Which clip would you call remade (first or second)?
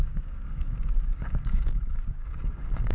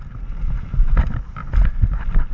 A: first